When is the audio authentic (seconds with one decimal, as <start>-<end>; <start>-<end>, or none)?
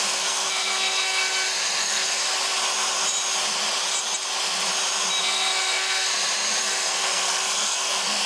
1.2-1.8; 2.3-5.2; 6.1-6.6